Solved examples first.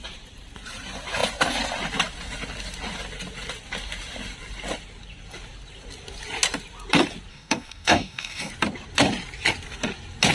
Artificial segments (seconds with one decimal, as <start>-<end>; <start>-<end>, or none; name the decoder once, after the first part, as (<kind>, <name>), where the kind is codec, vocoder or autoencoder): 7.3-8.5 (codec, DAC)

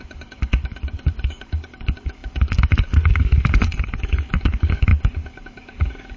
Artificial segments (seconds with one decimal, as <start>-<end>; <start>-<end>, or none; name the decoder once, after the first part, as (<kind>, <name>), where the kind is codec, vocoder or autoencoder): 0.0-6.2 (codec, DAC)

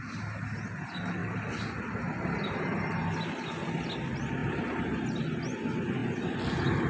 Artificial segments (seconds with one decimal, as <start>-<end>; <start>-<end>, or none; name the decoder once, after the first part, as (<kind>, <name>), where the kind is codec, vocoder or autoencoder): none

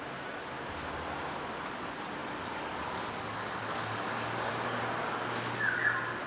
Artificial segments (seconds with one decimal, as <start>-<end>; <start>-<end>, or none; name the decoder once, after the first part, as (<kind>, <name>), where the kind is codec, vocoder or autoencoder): 2.2-4.5 (codec, DAC)

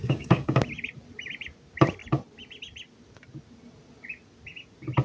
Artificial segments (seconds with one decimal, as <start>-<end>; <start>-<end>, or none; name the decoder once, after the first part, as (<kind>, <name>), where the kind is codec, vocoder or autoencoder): 0.0-0.6 (codec, DAC)

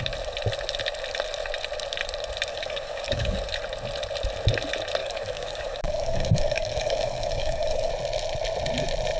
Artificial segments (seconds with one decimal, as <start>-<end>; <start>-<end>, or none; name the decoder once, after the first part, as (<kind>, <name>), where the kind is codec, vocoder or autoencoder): 2.5-3.4 (codec, DAC); 5.0-7.9

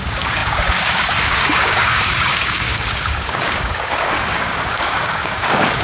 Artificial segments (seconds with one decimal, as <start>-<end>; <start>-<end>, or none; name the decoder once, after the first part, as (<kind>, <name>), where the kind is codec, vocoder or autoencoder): 0.0-5.8 (codec, DAC)